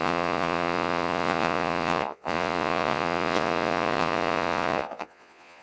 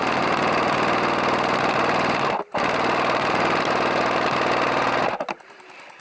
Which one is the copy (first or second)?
first